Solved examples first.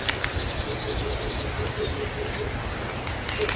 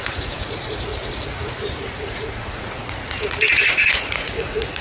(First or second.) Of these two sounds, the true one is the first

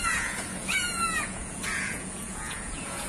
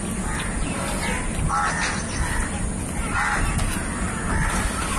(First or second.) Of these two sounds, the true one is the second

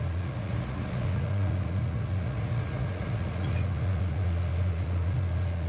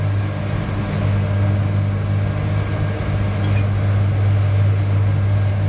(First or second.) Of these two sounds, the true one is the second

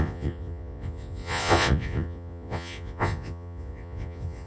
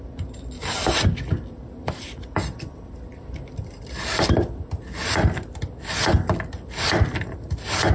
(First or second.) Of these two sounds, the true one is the second